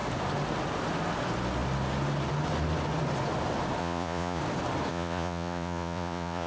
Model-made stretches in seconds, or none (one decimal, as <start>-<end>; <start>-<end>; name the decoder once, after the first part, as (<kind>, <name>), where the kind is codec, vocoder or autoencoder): 3.8-4.4 (vocoder, Vocos); 4.9-6.5